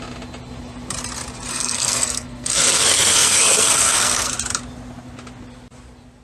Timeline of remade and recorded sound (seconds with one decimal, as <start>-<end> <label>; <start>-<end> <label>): 0.0-1.5 recorded; 1.5-4.3 remade; 4.3-6.2 recorded